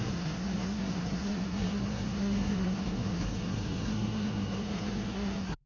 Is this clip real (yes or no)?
no